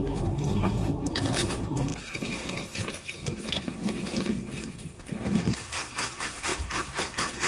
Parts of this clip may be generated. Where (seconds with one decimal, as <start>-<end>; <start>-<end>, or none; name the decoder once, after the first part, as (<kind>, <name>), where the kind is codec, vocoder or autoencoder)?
0.0-7.5 (codec, SNAC)